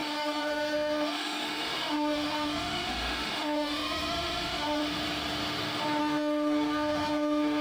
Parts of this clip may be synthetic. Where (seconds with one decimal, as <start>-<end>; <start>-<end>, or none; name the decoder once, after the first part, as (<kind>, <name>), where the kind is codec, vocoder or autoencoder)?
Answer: 0.0-4.8 (autoencoder, DAC-VAE); 6.0-7.6